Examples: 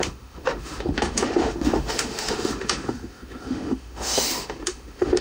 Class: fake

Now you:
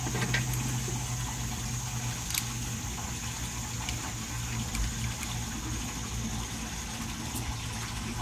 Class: real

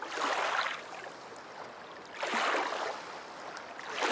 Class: real